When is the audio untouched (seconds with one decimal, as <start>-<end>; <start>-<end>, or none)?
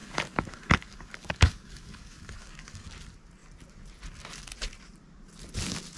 2.9-6.0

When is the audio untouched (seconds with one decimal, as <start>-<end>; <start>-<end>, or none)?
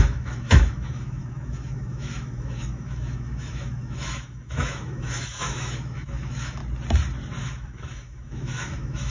6.6-7.4